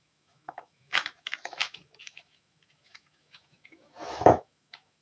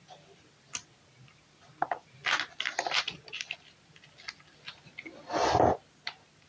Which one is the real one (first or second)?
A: second